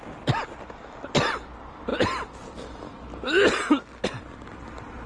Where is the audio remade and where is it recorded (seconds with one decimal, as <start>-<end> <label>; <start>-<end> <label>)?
0.0-5.1 recorded